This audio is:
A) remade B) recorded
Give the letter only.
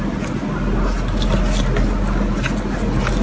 B